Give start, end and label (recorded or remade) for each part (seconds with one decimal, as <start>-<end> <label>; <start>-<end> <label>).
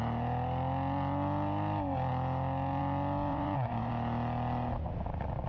0.0-3.3 recorded; 3.3-3.9 remade; 3.9-5.5 recorded